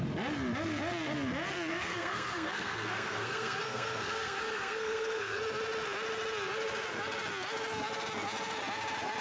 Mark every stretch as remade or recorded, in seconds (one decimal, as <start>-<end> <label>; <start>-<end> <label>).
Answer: 0.0-1.7 recorded; 1.7-5.4 remade; 5.4-9.2 recorded